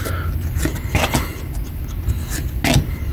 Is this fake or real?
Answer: real